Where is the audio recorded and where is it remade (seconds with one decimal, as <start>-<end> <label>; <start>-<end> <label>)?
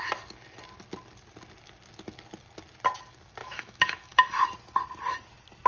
0.0-3.4 recorded; 3.4-4.5 remade; 4.5-5.7 recorded